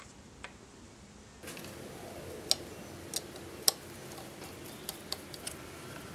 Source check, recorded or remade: recorded